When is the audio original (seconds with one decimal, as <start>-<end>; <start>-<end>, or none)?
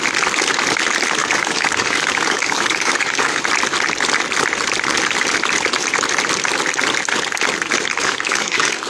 0.0-1.2; 3.4-8.0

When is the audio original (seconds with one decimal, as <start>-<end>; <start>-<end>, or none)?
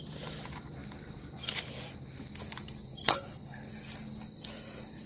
0.0-3.0; 3.7-5.1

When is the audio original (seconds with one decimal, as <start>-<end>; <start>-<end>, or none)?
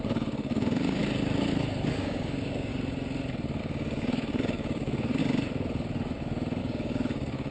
1.0-1.9; 2.7-3.6; 5.2-6.6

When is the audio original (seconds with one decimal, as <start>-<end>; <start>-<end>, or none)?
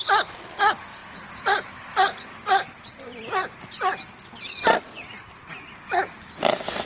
0.0-6.9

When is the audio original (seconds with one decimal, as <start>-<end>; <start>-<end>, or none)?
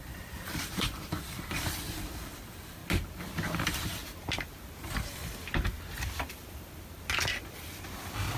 2.8-3.6; 4.0-4.8; 5.2-8.4